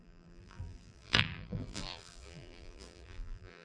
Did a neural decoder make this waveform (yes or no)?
yes